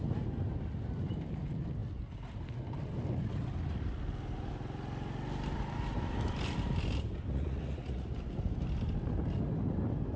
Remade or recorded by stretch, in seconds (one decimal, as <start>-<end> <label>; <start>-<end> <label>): 0.0-7.3 recorded; 7.3-8.1 remade; 8.1-10.2 recorded